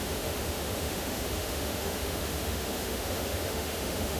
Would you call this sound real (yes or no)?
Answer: no